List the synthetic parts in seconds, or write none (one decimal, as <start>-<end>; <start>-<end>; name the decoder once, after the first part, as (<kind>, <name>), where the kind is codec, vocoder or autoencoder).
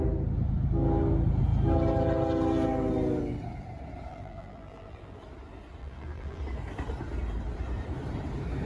4.1-5.2 (vocoder, BigVGAN v2); 5.8-6.4